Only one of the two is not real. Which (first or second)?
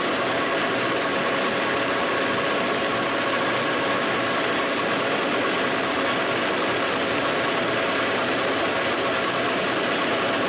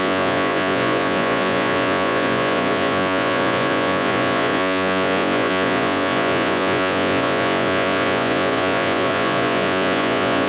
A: second